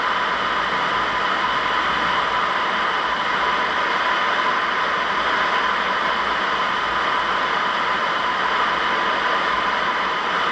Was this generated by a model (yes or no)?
no